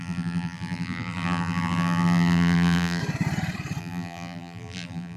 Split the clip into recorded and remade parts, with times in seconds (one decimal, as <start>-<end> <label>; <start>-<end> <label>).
0.0-3.0 remade; 3.0-3.8 recorded; 3.8-5.2 remade

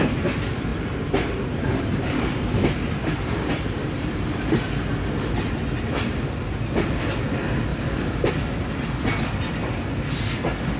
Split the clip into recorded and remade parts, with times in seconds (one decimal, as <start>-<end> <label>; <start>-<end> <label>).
0.0-0.7 recorded; 0.7-4.2 remade; 4.2-7.7 recorded; 7.7-8.3 remade; 8.3-9.6 recorded; 9.6-10.3 remade; 10.3-10.8 recorded

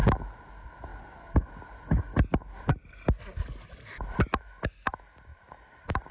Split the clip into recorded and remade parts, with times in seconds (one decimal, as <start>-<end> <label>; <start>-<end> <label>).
0.0-3.4 recorded; 3.4-4.2 remade; 4.2-5.3 recorded; 5.3-6.1 remade

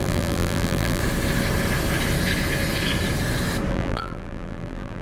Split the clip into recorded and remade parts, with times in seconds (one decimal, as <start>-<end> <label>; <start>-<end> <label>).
0.0-1.0 remade; 1.0-3.7 recorded; 3.7-5.0 remade

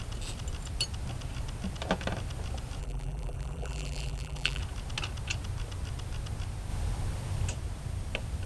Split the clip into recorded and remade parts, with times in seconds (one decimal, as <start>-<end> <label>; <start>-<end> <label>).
0.0-2.8 recorded; 2.8-4.6 remade; 4.6-8.5 recorded

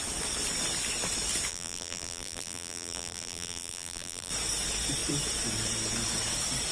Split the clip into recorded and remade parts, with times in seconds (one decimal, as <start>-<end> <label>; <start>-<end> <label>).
0.0-1.5 recorded; 1.5-4.3 remade; 4.3-6.7 recorded

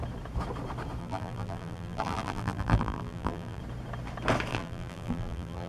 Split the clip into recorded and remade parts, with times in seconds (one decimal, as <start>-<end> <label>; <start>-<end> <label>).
0.0-1.0 recorded; 1.0-3.6 remade; 3.6-4.5 recorded; 4.5-5.7 remade